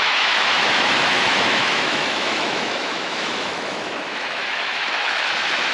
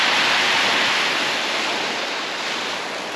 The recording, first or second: second